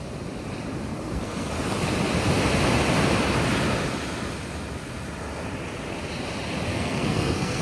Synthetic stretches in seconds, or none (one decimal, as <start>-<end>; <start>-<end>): 0.9-1.5; 6.7-7.6

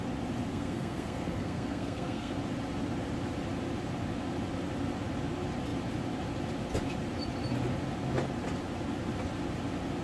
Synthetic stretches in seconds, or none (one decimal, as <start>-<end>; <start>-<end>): 0.5-2.3

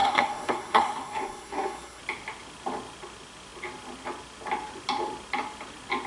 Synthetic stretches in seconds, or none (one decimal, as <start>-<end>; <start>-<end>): 0.0-2.0

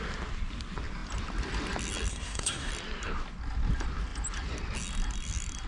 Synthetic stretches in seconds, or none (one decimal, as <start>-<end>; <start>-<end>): 2.1-2.7

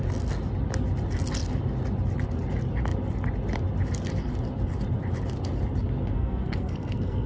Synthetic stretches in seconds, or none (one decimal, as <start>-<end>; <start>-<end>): 6.0-7.3